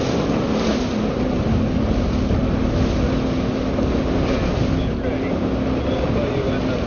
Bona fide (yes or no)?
yes